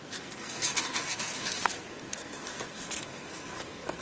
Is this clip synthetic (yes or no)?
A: yes